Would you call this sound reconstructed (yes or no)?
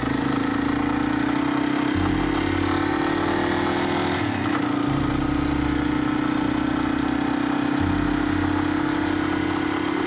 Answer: no